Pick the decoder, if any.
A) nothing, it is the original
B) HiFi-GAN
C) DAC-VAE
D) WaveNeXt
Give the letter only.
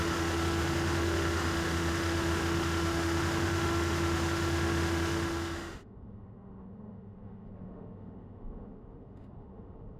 C